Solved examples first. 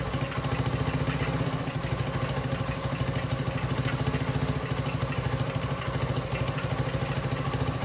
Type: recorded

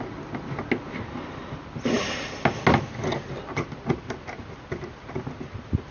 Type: recorded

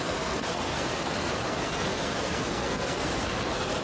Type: remade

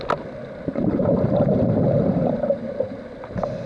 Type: recorded